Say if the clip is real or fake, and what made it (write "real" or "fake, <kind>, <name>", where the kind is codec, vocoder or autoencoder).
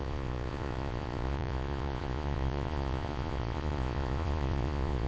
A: fake, vocoder, Vocos